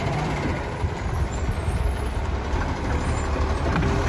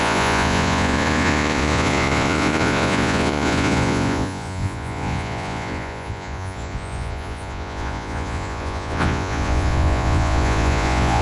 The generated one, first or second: second